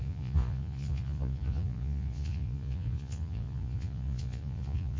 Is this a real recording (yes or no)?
no